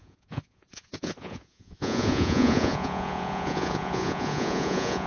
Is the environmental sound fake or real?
fake